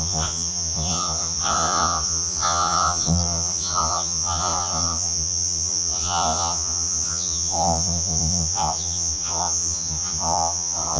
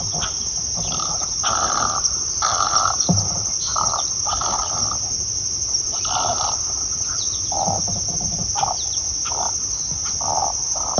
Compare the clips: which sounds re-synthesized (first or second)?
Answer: first